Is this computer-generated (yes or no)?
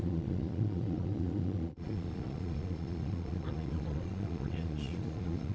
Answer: yes